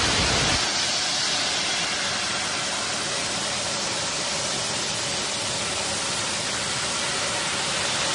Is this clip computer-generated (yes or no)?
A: no